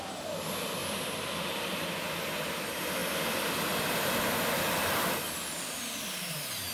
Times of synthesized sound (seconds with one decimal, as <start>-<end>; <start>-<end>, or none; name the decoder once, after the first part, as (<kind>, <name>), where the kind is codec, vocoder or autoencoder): 0.8-1.6 (vocoder, BigVGAN v2); 4.8-6.7